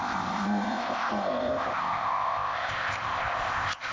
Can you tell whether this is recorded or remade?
remade